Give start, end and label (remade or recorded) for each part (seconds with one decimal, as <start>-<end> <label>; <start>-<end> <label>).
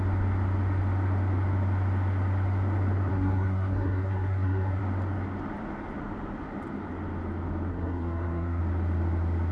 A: 0.0-3.1 recorded; 3.1-4.8 remade; 4.8-7.7 recorded; 7.7-8.6 remade; 8.6-9.5 recorded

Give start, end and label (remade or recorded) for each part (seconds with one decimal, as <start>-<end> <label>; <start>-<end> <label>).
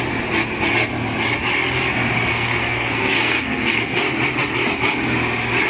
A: 0.0-2.3 recorded; 2.3-4.0 remade; 4.0-5.7 recorded